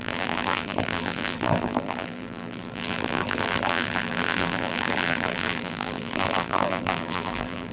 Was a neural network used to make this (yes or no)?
yes